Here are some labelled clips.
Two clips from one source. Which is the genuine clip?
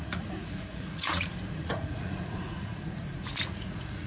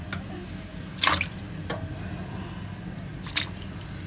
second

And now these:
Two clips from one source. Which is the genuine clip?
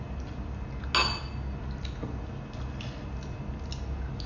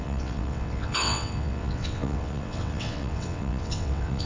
first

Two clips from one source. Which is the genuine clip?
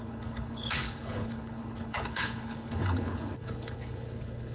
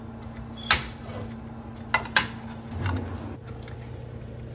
second